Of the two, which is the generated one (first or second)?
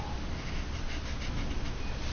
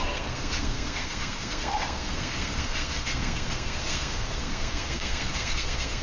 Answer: second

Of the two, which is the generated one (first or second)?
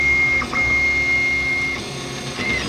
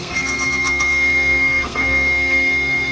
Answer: second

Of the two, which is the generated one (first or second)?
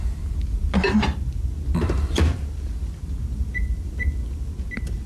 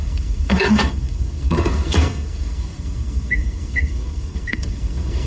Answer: second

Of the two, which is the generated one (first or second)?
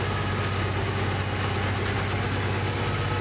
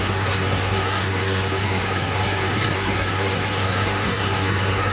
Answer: second